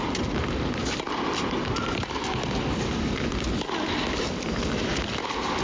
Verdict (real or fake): real